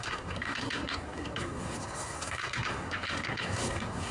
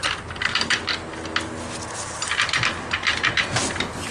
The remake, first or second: first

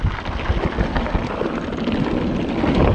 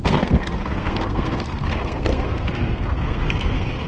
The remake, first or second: second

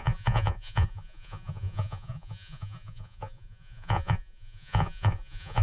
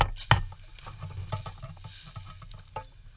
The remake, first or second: first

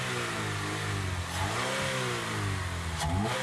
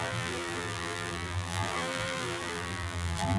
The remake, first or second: second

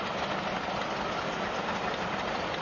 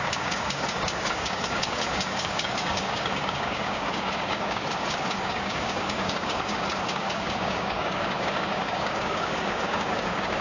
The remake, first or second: second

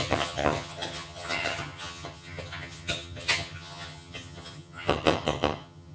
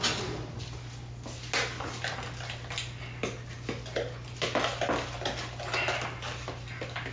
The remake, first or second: first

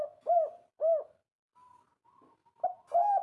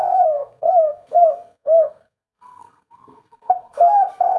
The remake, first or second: second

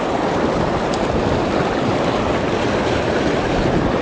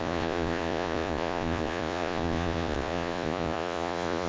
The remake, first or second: second